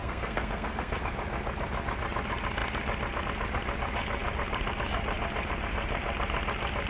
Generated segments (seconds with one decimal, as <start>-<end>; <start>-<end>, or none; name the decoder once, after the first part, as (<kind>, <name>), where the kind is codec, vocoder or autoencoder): 0.0-1.0 (codec, SNAC)